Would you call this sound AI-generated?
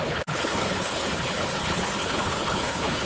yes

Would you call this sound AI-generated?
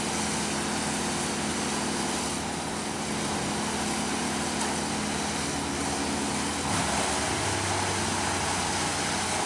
no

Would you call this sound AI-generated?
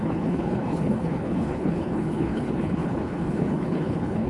yes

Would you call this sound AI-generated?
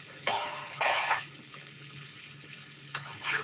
yes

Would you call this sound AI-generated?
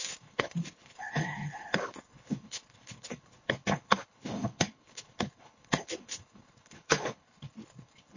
yes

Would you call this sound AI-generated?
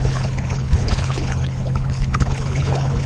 yes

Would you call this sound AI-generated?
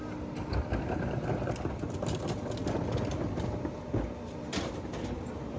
no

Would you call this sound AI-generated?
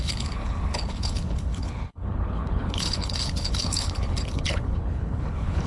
yes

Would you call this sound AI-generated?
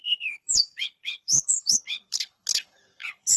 yes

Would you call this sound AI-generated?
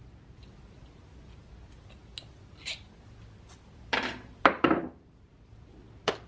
no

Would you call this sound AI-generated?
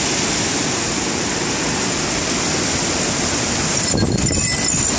no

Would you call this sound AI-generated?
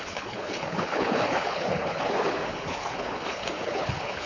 yes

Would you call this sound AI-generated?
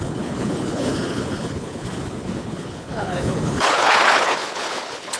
yes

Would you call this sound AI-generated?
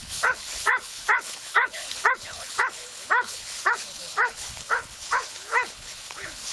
yes